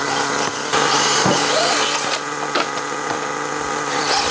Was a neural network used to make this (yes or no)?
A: no